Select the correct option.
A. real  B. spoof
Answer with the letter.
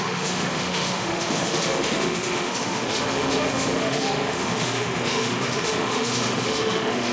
B